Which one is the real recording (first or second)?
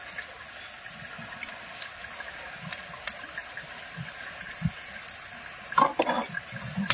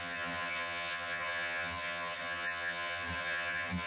first